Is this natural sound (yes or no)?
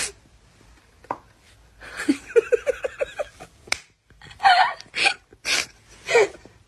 yes